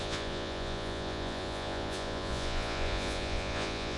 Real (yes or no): no